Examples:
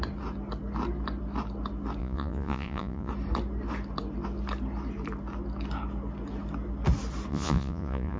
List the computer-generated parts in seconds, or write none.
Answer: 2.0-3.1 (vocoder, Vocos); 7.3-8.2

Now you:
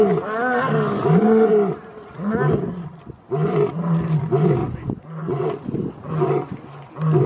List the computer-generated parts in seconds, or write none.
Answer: 4.6-5.5 (vocoder, Vocos)

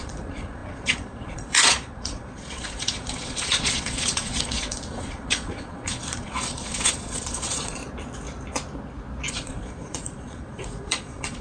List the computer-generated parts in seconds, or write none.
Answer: 0.0-7.8 (vocoder, Vocos); 9.3-11.4

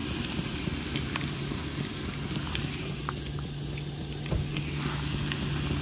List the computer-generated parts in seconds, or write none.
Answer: none

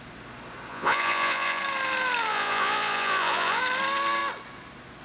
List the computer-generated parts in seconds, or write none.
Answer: 0.7-1.6 (vocoder, Vocos); 2.3-3.6

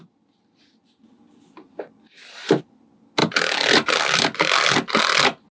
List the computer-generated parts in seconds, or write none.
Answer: none

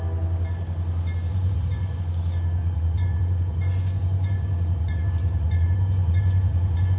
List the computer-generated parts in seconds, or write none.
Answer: 1.3-2.0 (vocoder, Vocos); 2.6-7.0

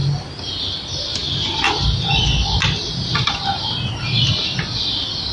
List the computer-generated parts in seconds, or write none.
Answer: none